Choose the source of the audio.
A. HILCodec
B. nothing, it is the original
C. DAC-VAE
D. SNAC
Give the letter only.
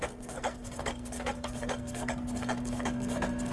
D